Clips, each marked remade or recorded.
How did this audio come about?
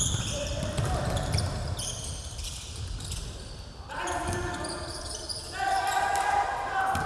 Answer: remade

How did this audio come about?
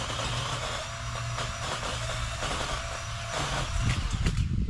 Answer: recorded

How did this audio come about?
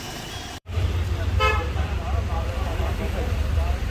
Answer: remade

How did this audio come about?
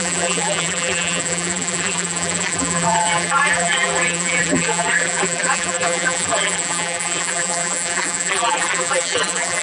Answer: remade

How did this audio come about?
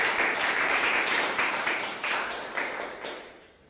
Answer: remade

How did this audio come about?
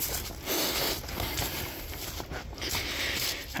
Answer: recorded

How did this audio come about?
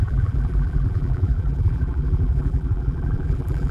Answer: remade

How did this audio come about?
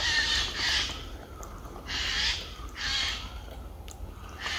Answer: recorded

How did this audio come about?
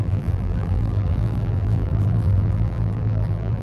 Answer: remade